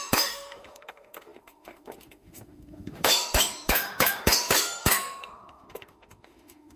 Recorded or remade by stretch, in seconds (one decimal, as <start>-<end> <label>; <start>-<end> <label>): 0.0-6.8 remade

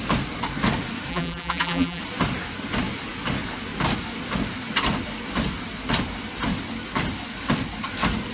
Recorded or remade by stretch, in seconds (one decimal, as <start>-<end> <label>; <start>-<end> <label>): 0.0-1.1 recorded; 1.1-2.0 remade; 2.0-8.3 recorded

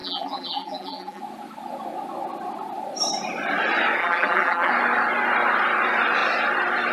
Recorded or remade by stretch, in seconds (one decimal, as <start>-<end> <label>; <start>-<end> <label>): 0.0-1.2 remade; 1.2-4.0 recorded; 4.0-4.7 remade; 4.7-6.9 recorded

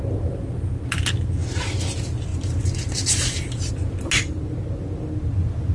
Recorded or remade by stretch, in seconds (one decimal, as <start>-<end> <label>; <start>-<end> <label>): 0.0-5.7 recorded